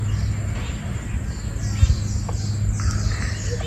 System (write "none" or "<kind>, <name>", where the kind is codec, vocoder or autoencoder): none